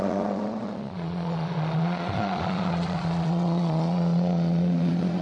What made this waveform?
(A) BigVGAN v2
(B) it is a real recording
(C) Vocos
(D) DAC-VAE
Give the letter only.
C